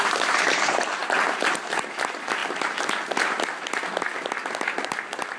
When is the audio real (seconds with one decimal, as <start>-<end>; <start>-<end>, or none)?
0.0-5.4